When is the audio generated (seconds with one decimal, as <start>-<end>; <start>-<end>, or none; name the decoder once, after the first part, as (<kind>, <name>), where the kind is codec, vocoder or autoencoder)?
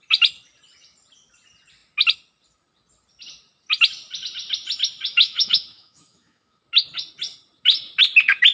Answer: 5.1-6.6 (autoencoder, DAC-VAE)